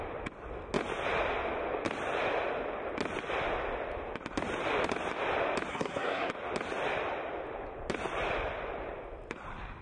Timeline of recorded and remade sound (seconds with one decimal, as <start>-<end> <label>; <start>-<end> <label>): 0.0-5.7 recorded; 5.7-6.3 remade; 6.3-9.8 recorded

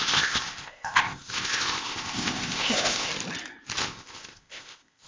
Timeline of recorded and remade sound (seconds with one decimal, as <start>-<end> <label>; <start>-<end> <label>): 0.0-3.1 remade; 3.1-3.8 recorded; 3.8-5.1 remade

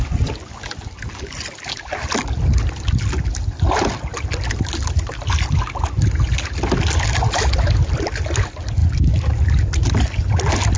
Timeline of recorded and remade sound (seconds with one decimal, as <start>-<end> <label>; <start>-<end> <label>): 0.0-10.8 recorded

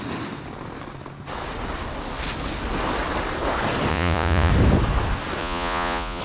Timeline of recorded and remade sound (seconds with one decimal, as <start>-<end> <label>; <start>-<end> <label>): 0.0-3.9 recorded; 3.9-4.5 remade; 4.5-5.4 recorded; 5.4-6.2 remade

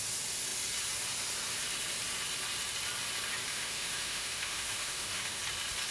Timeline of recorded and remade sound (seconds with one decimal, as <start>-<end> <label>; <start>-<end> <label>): 0.0-3.5 recorded; 3.5-5.4 remade; 5.4-5.9 recorded